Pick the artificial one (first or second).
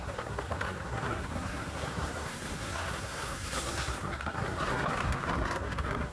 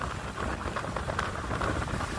first